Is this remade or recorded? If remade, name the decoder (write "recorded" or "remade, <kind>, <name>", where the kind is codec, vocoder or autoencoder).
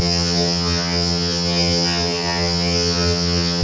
remade, vocoder, HiFi-GAN